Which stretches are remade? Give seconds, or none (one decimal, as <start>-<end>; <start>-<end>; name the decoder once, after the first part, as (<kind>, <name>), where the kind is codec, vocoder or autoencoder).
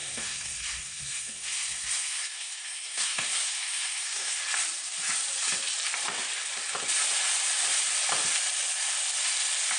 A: 0.0-4.4 (codec, SNAC)